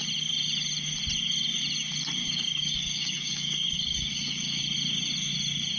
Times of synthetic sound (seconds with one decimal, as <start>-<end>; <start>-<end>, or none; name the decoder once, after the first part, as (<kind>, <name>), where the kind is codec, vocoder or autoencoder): 2.2-4.6 (codec, DAC)